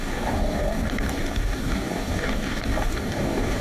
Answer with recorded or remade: remade